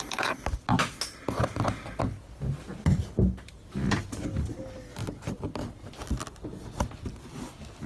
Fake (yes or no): no